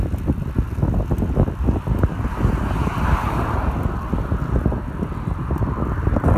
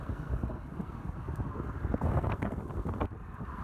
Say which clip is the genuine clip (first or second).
first